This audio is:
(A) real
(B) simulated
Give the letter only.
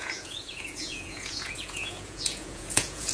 B